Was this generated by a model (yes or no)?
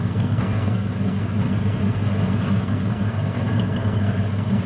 yes